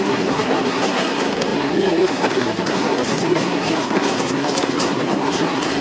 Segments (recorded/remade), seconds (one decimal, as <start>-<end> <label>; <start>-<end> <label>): 0.0-5.8 remade